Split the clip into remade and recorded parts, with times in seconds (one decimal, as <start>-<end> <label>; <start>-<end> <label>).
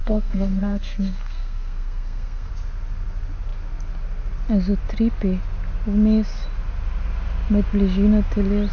0.0-2.5 remade; 2.5-8.7 recorded